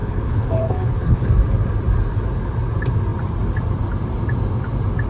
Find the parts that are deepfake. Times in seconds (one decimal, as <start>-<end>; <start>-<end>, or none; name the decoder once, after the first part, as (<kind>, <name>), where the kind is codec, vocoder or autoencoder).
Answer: 0.0-1.3 (codec, HILCodec)